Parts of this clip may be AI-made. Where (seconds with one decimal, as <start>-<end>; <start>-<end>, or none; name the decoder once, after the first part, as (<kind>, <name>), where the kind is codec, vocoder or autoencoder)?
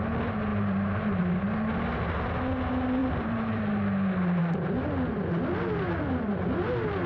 0.5-1.2 (vocoder, BigVGAN v2); 3.0-3.6